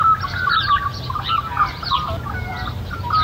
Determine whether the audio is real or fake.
real